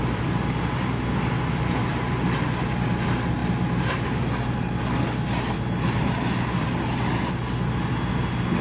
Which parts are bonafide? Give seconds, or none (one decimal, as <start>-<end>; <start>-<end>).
0.0-8.6